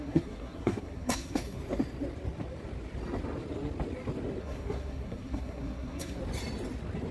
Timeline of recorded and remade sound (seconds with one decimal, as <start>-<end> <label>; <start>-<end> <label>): 0.0-1.6 remade; 1.6-4.4 recorded; 4.4-6.2 remade; 6.2-7.1 recorded

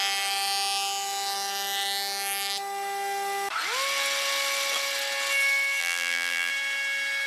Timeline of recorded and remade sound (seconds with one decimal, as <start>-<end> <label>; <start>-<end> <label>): 0.0-5.8 recorded; 5.8-6.5 remade; 6.5-7.3 recorded